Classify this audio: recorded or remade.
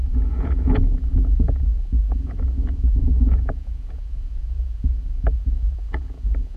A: remade